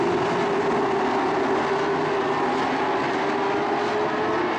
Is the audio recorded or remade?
recorded